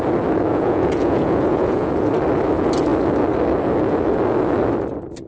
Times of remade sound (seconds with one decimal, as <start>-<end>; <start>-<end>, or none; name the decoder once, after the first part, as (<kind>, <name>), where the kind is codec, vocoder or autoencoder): 0.5-1.9 (vocoder, Vocos)